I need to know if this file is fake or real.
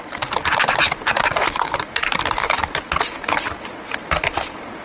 real